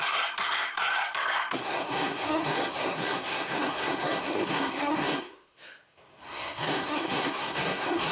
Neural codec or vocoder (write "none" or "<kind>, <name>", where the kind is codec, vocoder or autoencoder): codec, SNAC